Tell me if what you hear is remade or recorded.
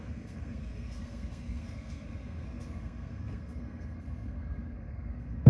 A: remade